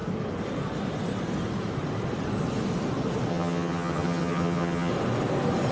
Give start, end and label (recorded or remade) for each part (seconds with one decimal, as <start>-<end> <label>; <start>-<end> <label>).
0.0-3.3 recorded; 3.3-4.9 remade; 4.9-5.7 recorded